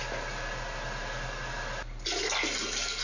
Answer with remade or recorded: recorded